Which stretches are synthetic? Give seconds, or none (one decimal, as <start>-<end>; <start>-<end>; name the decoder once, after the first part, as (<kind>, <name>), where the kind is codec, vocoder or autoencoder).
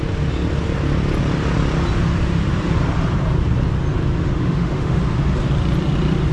4.2-5.0 (autoencoder, DAC-VAE)